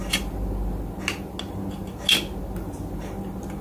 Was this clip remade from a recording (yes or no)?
no